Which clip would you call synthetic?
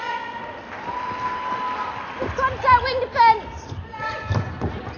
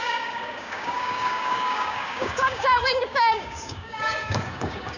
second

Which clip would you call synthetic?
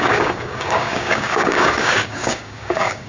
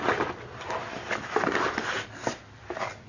first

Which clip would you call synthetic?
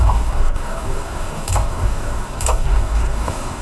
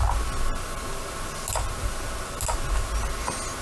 first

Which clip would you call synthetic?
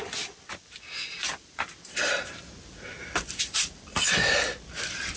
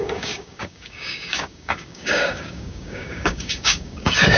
second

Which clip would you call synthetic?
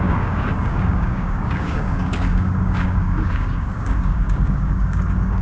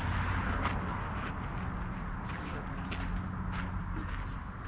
first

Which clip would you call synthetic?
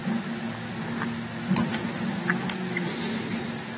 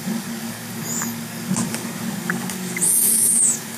second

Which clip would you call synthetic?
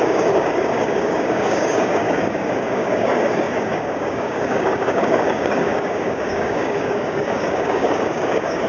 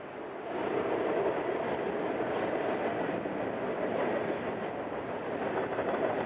first